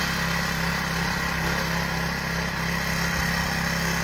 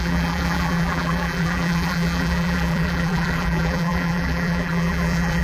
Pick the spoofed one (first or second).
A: second